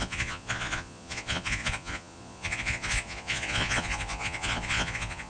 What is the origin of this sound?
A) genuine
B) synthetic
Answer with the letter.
B